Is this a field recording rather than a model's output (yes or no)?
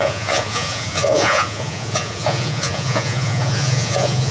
no